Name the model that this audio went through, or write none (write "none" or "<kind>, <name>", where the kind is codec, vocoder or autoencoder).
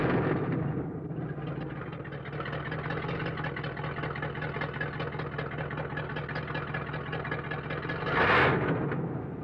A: none